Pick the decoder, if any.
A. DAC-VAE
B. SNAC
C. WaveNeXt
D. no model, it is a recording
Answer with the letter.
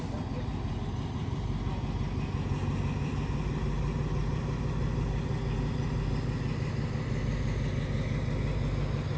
D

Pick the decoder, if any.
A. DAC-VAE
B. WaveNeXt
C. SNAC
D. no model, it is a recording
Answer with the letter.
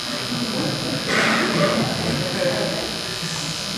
D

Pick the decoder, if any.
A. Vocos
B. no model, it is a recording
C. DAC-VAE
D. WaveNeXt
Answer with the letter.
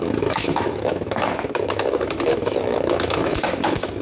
C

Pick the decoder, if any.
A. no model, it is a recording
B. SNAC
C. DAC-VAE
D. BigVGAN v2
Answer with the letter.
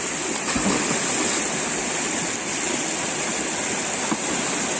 A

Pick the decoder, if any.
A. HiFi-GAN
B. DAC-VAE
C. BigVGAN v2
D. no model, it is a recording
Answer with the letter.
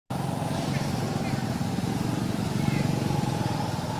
D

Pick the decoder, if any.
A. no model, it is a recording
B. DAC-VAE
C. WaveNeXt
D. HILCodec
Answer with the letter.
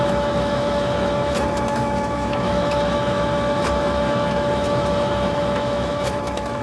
B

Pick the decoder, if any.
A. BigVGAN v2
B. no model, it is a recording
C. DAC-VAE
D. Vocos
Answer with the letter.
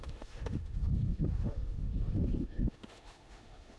C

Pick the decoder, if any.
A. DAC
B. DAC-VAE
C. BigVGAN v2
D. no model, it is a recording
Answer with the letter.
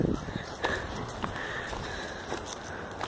D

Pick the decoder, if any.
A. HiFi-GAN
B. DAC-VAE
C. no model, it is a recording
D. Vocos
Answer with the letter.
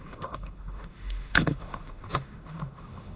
B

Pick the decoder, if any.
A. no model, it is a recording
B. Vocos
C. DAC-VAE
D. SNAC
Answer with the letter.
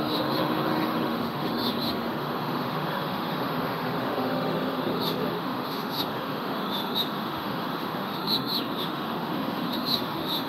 C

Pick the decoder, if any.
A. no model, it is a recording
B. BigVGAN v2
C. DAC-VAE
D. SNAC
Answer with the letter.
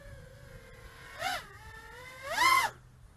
A